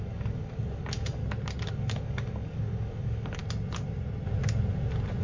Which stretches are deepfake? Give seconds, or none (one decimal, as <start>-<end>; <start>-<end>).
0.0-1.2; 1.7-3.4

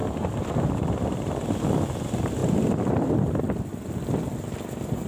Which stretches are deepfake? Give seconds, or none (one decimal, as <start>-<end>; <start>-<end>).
none

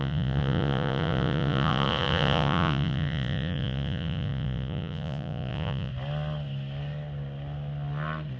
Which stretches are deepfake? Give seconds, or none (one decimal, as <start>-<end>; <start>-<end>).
0.0-5.9